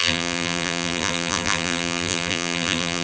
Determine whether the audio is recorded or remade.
remade